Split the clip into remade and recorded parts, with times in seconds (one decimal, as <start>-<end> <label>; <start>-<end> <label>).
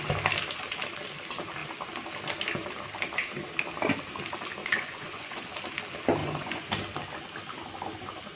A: 0.0-4.6 recorded; 4.6-5.4 remade; 5.4-6.2 recorded; 6.2-6.7 remade; 6.7-8.4 recorded